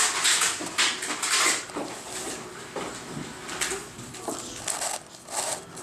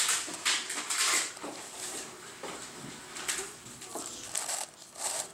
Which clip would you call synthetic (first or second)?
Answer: second